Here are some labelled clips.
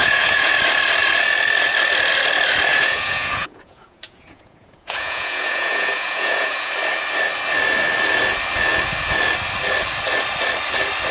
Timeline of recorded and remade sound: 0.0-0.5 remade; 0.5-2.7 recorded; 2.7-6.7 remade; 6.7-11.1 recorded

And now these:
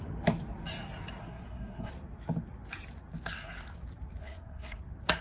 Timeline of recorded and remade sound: 0.0-1.2 recorded; 1.2-1.9 remade; 1.9-4.2 recorded; 4.2-4.8 remade; 4.8-5.2 recorded

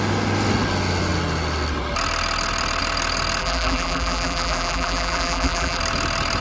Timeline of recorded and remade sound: 0.0-3.4 recorded; 3.4-5.8 remade; 5.8-6.4 recorded

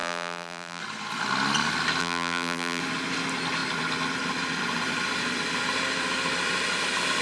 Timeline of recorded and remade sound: 0.0-0.8 remade; 0.8-2.0 recorded; 2.0-2.8 remade; 2.8-7.2 recorded

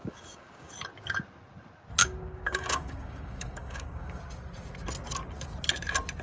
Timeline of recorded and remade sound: 0.0-0.7 remade; 0.7-2.0 recorded; 2.0-4.2 remade; 4.2-6.2 recorded